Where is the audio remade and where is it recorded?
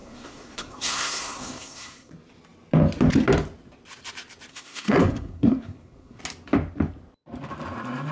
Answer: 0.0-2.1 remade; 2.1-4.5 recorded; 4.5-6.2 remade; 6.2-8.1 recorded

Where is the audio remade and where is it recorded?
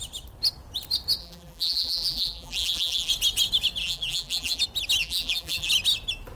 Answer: 0.0-1.2 recorded; 1.2-3.1 remade; 3.1-3.8 recorded; 3.8-4.6 remade; 4.6-5.0 recorded; 5.0-5.7 remade; 5.7-6.4 recorded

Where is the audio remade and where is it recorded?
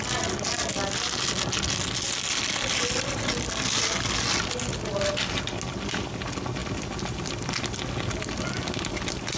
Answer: 0.0-9.4 recorded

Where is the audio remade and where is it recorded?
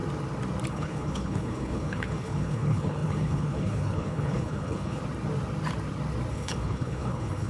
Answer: 0.0-0.7 recorded; 0.7-5.0 remade; 5.0-6.3 recorded; 6.3-7.5 remade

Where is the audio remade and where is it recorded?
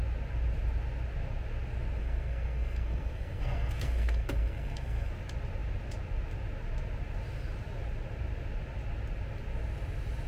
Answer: 0.0-2.0 recorded; 2.0-5.1 remade; 5.1-10.3 recorded